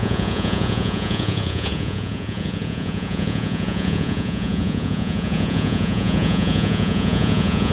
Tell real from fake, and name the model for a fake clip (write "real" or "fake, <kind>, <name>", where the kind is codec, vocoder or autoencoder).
fake, vocoder, Vocos